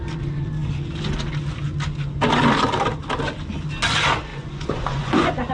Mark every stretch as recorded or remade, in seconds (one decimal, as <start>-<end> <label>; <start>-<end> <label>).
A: 0.0-4.3 recorded; 4.3-5.5 remade